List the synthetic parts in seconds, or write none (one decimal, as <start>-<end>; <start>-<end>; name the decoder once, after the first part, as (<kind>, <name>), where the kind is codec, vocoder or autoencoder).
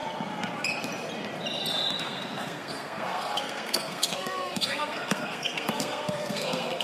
2.0-6.8 (codec, SNAC)